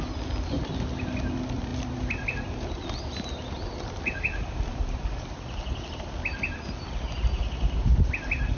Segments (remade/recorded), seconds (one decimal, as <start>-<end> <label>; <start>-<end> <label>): 0.0-8.6 recorded